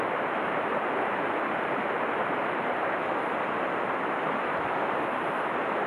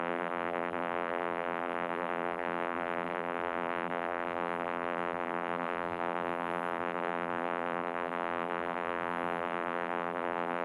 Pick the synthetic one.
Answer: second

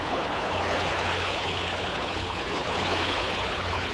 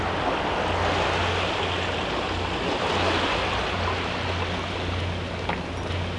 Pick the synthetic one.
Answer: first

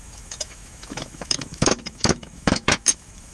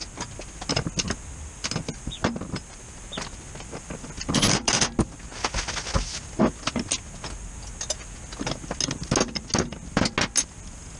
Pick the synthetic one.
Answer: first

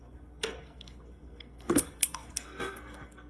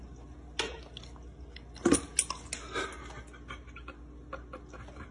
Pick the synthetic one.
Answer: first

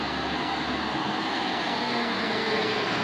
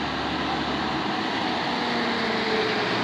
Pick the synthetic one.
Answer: first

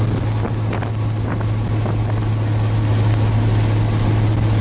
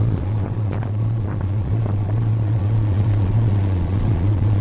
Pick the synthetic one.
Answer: second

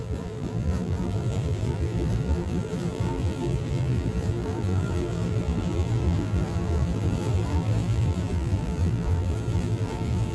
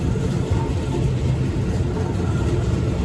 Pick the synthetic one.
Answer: first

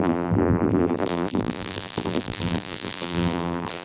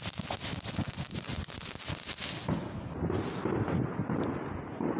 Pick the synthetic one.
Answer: first